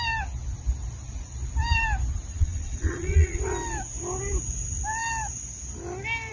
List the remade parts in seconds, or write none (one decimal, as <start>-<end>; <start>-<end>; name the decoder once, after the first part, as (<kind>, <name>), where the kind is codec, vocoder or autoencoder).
2.3-3.4 (vocoder, Vocos)